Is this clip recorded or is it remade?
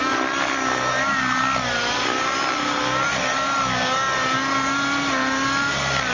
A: recorded